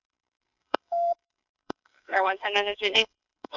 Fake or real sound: fake